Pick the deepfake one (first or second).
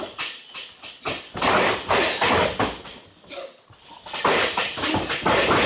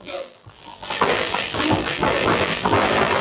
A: second